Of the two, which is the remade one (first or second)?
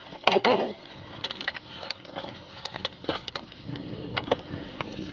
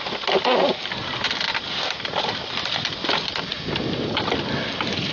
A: first